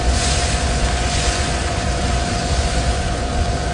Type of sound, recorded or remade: remade